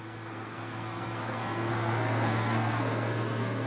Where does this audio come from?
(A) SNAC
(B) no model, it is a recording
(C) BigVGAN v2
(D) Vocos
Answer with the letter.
A